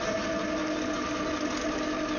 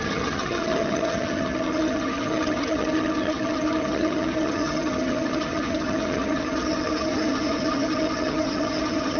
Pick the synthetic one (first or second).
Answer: second